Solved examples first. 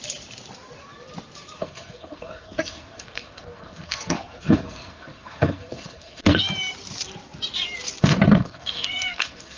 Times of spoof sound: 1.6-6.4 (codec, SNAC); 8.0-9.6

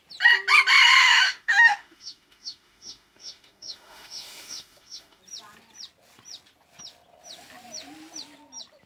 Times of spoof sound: 1.0-5.2 (autoencoder, DAC-VAE)

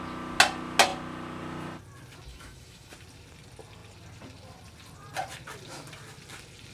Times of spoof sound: 2.3-2.9 (autoencoder, DAC-VAE)